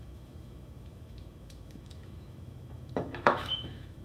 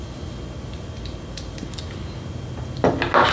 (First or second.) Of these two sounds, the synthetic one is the first